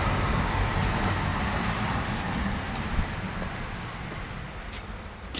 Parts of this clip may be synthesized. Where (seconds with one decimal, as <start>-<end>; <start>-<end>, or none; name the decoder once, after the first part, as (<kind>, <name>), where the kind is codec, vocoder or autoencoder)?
1.3-3.3 (vocoder, BigVGAN v2)